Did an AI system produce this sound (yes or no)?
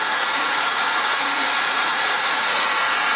yes